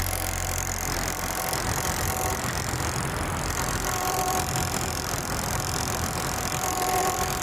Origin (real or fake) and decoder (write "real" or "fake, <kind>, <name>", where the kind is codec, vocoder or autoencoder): fake, vocoder, BigVGAN v2